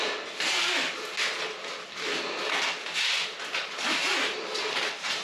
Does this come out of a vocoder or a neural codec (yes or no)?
no